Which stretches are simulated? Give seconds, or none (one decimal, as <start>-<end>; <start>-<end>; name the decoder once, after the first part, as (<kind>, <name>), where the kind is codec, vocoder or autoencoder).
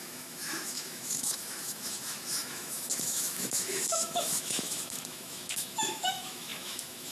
0.0-7.1 (autoencoder, DAC-VAE)